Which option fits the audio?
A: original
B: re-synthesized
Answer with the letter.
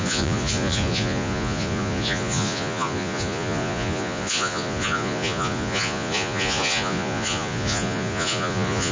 B